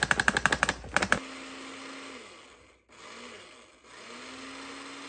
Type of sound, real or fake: real